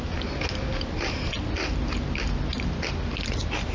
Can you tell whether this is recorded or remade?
recorded